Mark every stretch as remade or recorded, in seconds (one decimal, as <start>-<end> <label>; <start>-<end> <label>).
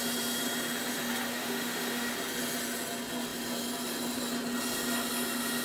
0.0-1.3 recorded; 1.3-2.1 remade; 2.1-5.6 recorded